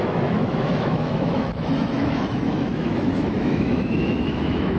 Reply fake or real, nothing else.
fake